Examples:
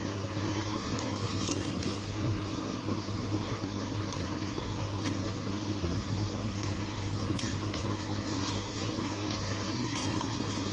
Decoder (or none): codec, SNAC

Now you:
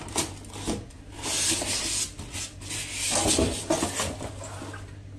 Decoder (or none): none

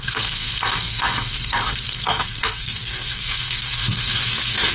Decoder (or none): codec, SNAC